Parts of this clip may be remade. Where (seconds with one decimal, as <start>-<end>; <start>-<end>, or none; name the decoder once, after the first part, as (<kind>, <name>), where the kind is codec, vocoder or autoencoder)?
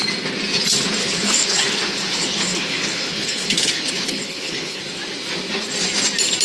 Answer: 1.0-4.8 (codec, HILCodec)